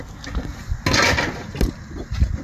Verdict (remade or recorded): recorded